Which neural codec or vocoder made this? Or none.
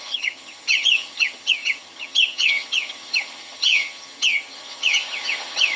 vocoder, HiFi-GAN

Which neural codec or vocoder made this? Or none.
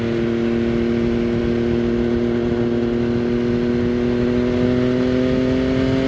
none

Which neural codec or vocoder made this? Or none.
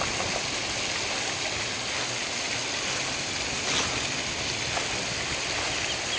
none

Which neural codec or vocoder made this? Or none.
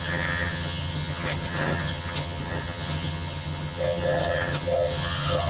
vocoder, HiFi-GAN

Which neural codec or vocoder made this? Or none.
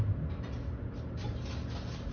none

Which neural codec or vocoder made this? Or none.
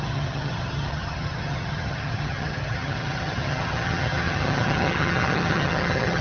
vocoder, HiFi-GAN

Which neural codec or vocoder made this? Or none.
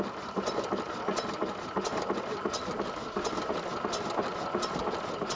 none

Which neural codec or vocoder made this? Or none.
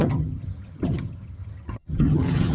vocoder, HiFi-GAN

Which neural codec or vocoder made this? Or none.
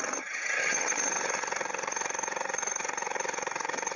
vocoder, HiFi-GAN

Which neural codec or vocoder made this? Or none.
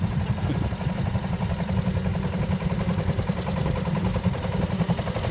none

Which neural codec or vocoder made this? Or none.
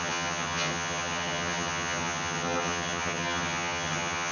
vocoder, HiFi-GAN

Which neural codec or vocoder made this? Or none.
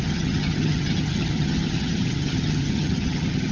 vocoder, HiFi-GAN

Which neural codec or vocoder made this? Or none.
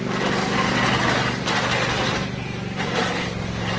none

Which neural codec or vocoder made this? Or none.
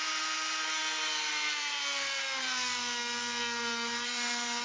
none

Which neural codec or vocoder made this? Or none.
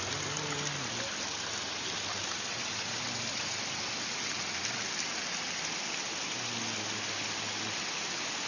none